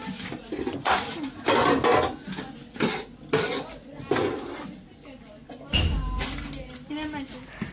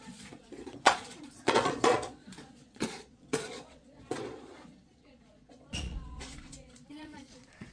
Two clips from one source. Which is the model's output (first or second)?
second